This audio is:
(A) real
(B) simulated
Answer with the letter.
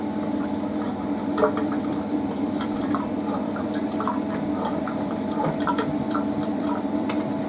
B